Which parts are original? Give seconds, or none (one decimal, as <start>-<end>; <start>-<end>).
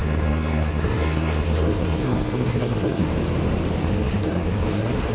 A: 3.1-3.8